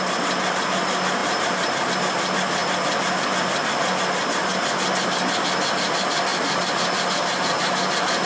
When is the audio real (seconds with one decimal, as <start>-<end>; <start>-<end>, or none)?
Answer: 0.0-1.2; 1.9-6.3; 7.9-8.3